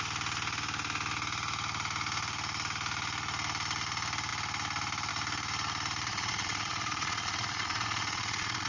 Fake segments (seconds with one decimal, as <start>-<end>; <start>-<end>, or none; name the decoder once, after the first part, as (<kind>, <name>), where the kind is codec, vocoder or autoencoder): 6.1-8.7 (vocoder, Vocos)